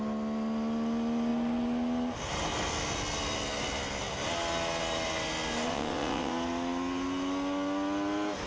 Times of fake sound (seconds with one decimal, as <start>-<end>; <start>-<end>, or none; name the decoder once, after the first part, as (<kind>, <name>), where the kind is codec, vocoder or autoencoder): 5.7-6.3 (vocoder, WaveNeXt)